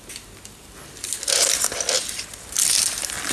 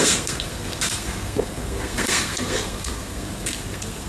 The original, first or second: first